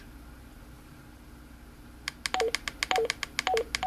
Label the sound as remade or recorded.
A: recorded